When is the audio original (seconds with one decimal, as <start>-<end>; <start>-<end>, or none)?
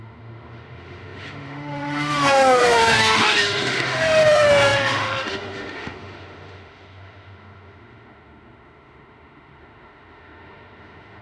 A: none